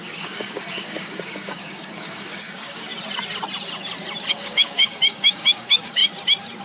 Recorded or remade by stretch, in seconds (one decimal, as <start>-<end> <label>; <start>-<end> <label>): 0.0-2.9 remade; 2.9-4.3 recorded; 4.3-6.0 remade; 6.0-6.6 recorded